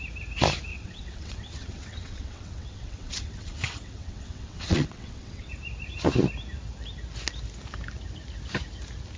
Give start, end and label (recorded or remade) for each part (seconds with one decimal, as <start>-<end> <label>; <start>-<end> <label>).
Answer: 0.0-0.7 recorded; 0.7-5.5 remade; 5.5-9.2 recorded